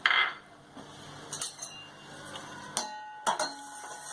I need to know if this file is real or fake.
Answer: real